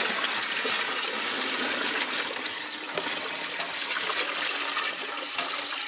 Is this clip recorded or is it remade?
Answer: recorded